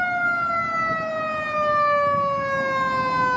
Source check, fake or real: real